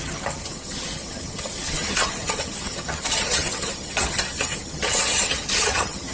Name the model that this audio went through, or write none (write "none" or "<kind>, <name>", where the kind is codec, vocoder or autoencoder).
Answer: vocoder, HiFi-GAN